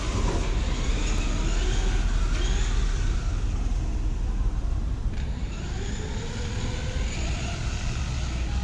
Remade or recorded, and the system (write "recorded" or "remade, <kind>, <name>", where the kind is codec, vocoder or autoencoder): recorded